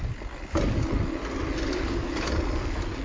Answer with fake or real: real